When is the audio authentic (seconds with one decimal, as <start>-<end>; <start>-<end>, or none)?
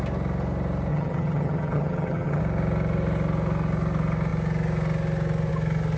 0.0-0.9; 2.4-6.0